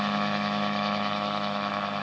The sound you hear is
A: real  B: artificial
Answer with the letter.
B